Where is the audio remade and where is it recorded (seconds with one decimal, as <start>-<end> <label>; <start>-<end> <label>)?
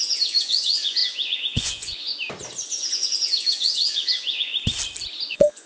0.0-2.1 remade; 2.1-2.7 recorded; 2.7-4.5 remade; 4.5-5.3 recorded; 5.3-5.7 remade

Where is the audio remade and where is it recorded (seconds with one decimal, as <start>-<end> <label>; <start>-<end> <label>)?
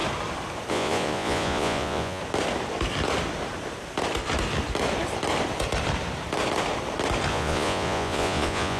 0.0-0.7 recorded; 0.7-2.2 remade; 2.2-7.3 recorded; 7.3-8.8 remade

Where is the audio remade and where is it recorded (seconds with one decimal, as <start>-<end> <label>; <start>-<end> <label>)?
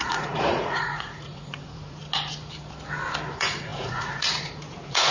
0.0-2.0 remade; 2.0-3.3 recorded; 3.3-5.1 remade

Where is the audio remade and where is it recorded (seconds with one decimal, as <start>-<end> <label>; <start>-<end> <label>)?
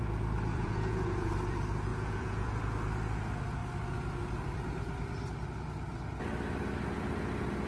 0.0-0.5 recorded; 0.5-1.3 remade; 1.3-1.9 recorded; 1.9-2.5 remade; 2.5-7.7 recorded